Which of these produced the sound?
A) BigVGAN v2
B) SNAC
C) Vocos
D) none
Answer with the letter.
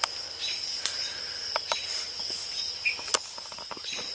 D